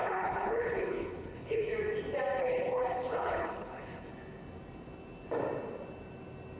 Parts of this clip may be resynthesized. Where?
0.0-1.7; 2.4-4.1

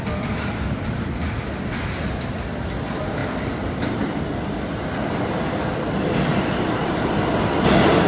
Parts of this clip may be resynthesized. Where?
none

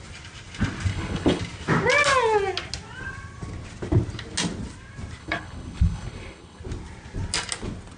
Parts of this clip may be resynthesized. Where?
0.9-1.4; 5.2-6.6

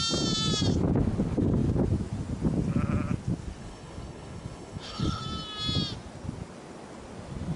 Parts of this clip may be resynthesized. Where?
3.6-5.2

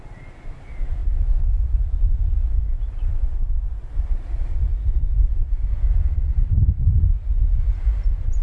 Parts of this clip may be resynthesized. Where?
none